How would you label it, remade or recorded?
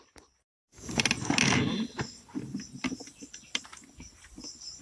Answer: recorded